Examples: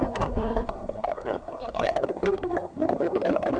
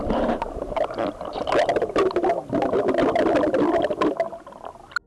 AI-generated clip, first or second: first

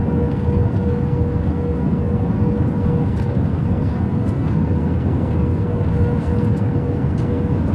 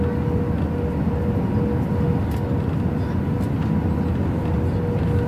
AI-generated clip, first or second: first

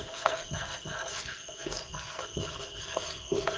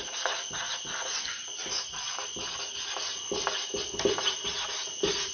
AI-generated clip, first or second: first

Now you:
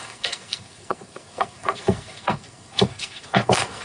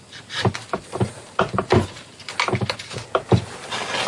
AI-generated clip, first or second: first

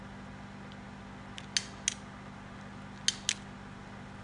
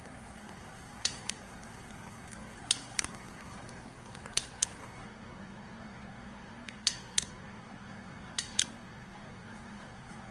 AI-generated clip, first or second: second